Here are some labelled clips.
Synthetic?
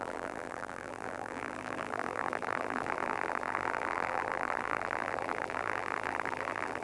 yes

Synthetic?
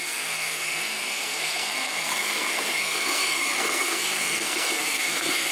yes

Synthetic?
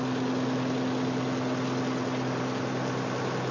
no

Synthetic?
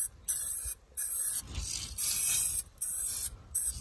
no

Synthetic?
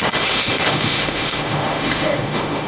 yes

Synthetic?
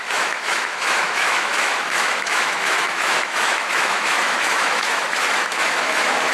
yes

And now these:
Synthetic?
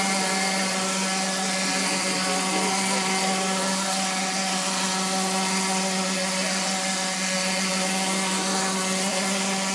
no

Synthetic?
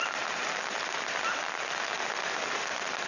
no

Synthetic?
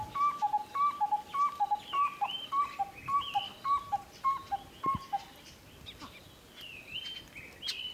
no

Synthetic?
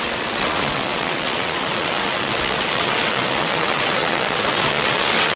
yes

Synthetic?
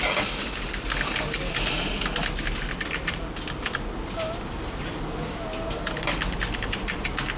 no